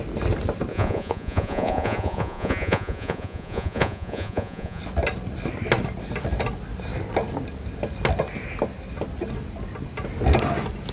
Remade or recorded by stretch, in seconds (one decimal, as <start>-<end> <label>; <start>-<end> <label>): 0.0-0.7 recorded; 0.7-4.8 remade; 4.8-10.9 recorded